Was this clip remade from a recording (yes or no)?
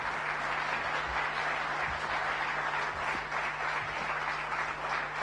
no